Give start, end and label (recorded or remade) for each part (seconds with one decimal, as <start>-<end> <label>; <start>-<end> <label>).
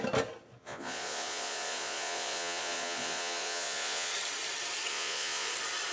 0.0-0.6 recorded; 0.6-4.1 remade; 4.1-4.9 recorded; 4.9-5.5 remade; 5.5-5.9 recorded